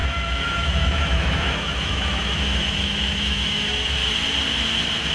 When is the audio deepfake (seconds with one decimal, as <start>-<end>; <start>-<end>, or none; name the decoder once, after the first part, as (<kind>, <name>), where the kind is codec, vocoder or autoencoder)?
0.0-4.0 (autoencoder, DAC-VAE)